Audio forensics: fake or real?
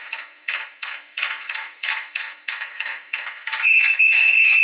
fake